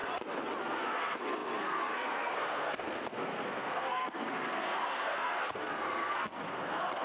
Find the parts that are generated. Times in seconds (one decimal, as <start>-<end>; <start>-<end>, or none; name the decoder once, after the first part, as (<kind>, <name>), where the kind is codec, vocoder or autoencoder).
0.6-7.0 (codec, SNAC)